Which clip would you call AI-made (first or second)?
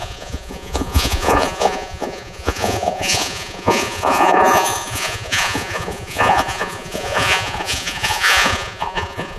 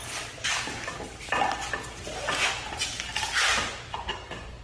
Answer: first